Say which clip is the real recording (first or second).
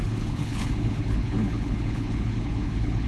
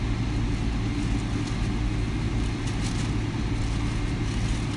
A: second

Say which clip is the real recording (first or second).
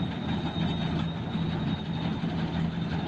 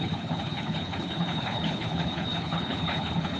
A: first